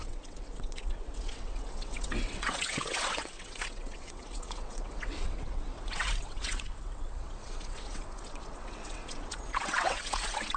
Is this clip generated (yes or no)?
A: yes